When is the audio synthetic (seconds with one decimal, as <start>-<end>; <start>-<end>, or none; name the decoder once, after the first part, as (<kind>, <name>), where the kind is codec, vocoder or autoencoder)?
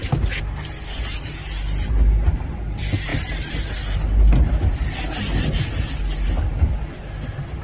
none